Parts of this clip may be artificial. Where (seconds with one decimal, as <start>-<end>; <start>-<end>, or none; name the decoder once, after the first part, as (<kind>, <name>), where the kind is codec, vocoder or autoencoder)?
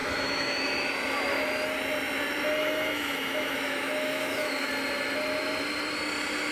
0.0-0.9 (autoencoder, DAC-VAE); 2.6-4.7